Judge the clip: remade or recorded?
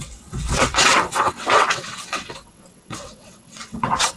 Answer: remade